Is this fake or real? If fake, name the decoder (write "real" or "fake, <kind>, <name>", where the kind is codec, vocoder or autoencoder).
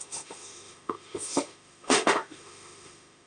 fake, autoencoder, DAC-VAE